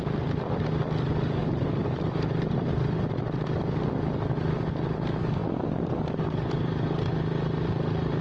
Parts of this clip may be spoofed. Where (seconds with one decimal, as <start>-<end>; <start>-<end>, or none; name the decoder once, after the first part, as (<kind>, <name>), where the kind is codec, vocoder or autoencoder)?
1.4-3.0 (vocoder, BigVGAN v2); 5.4-6.0; 6.4-7.1